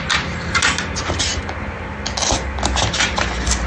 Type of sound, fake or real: real